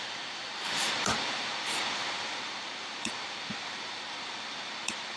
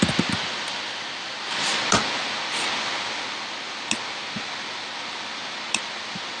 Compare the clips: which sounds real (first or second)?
second